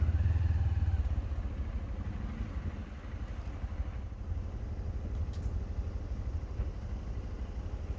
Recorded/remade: recorded